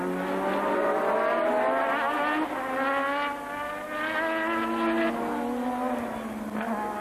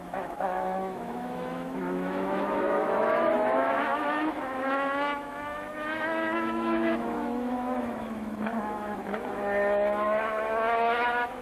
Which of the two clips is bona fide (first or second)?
first